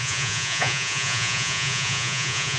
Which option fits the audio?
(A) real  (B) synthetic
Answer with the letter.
B